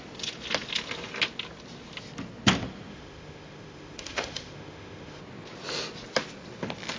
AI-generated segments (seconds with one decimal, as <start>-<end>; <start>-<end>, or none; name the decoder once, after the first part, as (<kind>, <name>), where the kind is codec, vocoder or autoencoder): 2.9-5.2 (autoencoder, DAC-VAE)